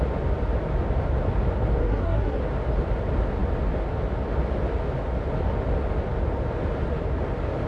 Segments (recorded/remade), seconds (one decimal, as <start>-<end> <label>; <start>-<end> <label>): 0.0-1.8 recorded; 1.8-2.4 remade; 2.4-7.7 recorded